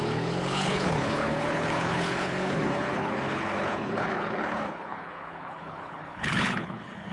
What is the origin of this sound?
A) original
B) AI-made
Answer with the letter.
B